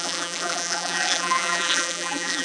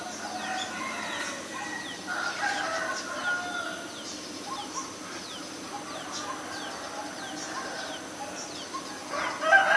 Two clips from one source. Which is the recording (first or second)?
second